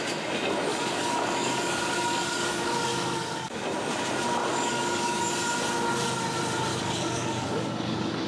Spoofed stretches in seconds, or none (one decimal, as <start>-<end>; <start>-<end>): 0.7-3.6; 4.4-5.3; 6.7-8.3